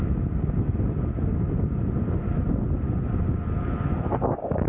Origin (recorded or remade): recorded